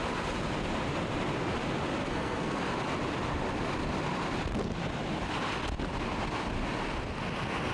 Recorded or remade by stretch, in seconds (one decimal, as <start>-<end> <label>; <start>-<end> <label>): 0.0-2.0 recorded; 2.0-2.6 remade; 2.6-7.7 recorded